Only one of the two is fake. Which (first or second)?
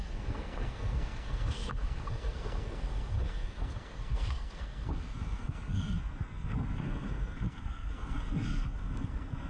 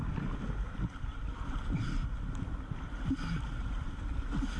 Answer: first